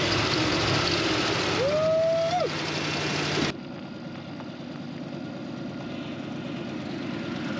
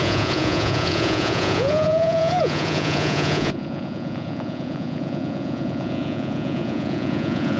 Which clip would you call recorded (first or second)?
first